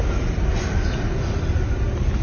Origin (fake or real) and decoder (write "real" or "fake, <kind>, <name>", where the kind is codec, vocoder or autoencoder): real